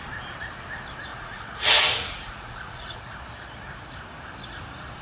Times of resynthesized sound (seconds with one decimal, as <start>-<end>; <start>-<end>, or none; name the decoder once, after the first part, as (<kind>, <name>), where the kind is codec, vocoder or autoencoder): 1.1-3.0 (vocoder, Vocos)

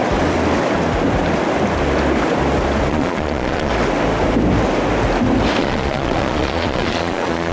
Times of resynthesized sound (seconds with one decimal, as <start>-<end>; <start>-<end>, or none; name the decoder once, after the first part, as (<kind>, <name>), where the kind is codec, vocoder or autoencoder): 2.9-3.7 (vocoder, Vocos); 5.6-7.5

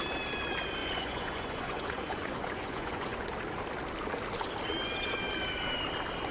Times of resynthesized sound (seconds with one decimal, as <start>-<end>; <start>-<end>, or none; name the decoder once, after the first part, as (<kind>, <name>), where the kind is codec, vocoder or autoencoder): 0.8-3.2 (vocoder, Vocos)

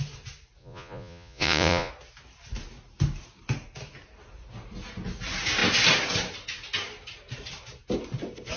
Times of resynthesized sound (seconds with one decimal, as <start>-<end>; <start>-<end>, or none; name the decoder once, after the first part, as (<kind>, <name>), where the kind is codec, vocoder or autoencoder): 0.6-1.9 (vocoder, Vocos)

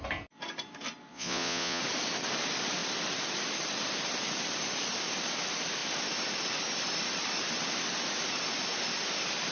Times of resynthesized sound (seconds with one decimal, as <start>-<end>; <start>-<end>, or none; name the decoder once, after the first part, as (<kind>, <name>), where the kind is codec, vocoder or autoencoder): 1.1-1.8 (vocoder, Vocos)

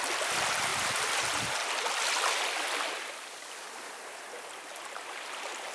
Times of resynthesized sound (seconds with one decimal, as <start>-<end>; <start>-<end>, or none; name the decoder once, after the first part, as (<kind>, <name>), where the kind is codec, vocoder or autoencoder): none